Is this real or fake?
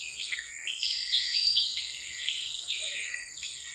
fake